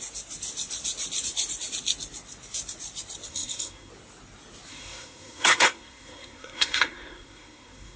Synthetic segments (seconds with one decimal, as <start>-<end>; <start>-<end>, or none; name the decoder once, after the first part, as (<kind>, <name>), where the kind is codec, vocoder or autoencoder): 3.3-3.9 (codec, SNAC); 4.7-8.0